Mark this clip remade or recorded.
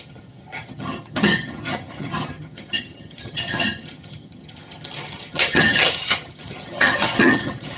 remade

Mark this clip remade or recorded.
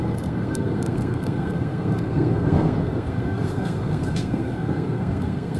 remade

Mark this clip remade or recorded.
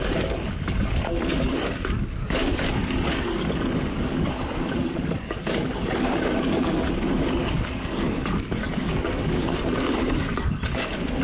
remade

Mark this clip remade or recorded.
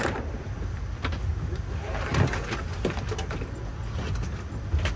recorded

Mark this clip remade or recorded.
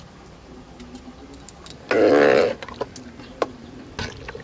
recorded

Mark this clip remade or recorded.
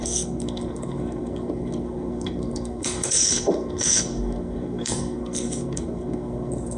remade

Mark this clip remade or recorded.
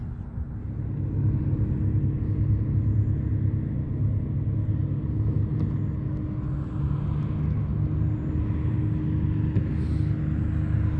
recorded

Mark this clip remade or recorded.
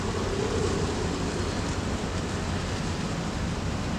recorded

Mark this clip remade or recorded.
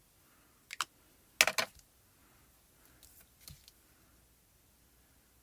recorded